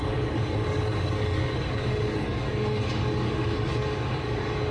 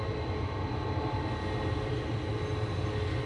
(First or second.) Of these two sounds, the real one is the second